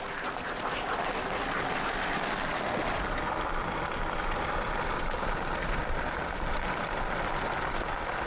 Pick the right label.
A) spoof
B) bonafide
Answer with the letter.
B